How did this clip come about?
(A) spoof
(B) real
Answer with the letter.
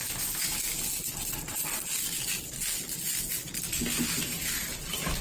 B